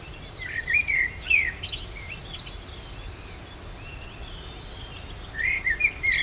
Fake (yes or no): no